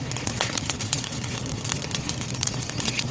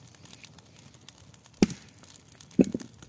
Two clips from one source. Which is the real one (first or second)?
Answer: second